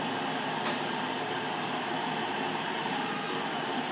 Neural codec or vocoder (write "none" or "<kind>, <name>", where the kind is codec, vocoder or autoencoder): vocoder, BigVGAN v2